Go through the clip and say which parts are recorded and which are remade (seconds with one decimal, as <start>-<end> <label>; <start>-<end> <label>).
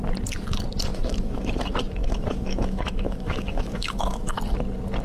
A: 0.0-0.9 recorded; 0.9-1.5 remade; 1.5-2.0 recorded; 2.0-4.4 remade; 4.4-5.0 recorded